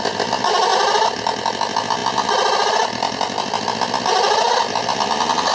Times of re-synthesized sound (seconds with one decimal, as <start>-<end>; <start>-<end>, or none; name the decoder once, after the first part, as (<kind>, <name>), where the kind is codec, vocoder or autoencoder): none